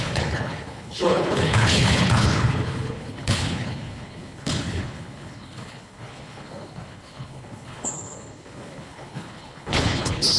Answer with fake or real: fake